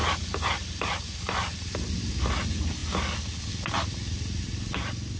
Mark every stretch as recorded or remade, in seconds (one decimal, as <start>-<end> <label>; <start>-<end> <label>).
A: 0.0-5.2 recorded